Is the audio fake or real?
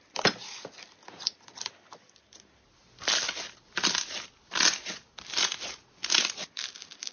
real